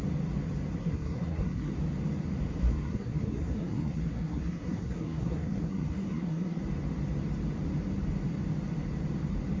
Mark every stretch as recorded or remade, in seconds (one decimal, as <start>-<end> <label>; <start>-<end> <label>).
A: 0.0-0.8 recorded; 0.8-1.7 remade; 1.7-2.6 recorded; 2.6-6.6 remade; 6.6-9.6 recorded